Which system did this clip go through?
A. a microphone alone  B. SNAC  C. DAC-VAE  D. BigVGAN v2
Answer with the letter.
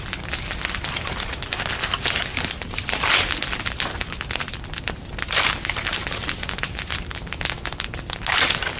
A